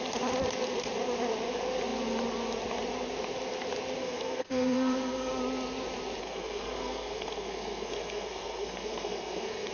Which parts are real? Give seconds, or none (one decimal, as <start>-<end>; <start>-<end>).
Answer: 0.0-4.0; 5.4-6.2